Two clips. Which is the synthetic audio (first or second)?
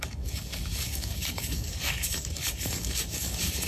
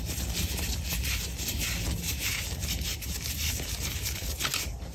first